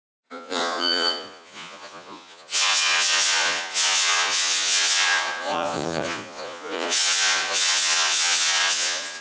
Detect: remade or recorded remade